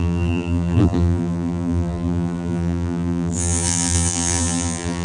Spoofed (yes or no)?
yes